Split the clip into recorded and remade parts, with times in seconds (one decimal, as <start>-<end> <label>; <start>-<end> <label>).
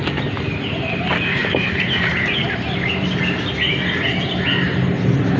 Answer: 0.0-1.4 recorded; 1.4-3.2 remade; 3.2-5.4 recorded